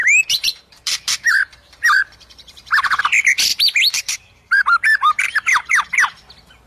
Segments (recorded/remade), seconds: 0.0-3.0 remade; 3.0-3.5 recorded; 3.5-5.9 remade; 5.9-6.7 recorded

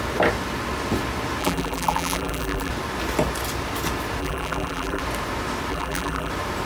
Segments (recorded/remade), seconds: 0.0-1.4 recorded; 1.4-2.7 remade; 2.7-4.2 recorded; 4.2-5.0 remade; 5.0-5.7 recorded; 5.7-6.3 remade; 6.3-6.7 recorded

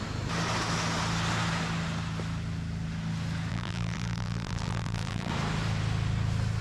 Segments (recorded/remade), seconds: 0.0-3.5 recorded; 3.5-5.3 remade; 5.3-6.6 recorded

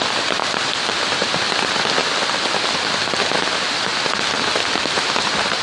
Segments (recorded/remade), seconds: 0.0-2.0 remade; 2.0-3.2 recorded; 3.2-3.9 remade; 3.9-4.6 recorded; 4.6-5.6 remade

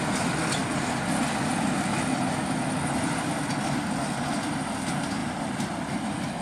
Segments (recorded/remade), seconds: 0.0-5.2 recorded; 5.2-5.8 remade; 5.8-6.4 recorded

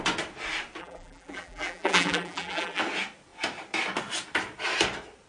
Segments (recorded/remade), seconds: 0.0-0.8 recorded; 0.8-2.8 remade; 2.8-5.3 recorded